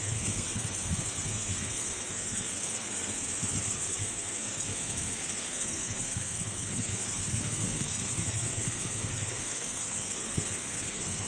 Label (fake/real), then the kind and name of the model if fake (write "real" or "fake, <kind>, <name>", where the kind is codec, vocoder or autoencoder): fake, codec, SNAC